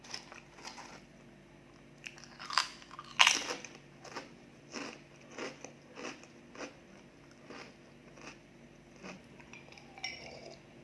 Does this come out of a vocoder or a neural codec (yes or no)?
no